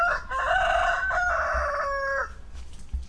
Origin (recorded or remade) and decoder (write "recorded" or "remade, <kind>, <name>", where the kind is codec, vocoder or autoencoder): recorded